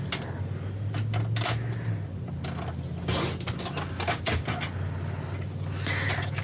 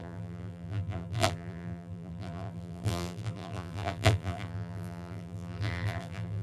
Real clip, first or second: first